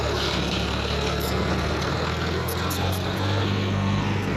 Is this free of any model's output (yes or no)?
no